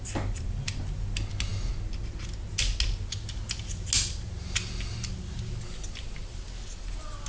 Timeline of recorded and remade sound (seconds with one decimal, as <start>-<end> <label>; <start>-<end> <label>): 0.0-7.3 recorded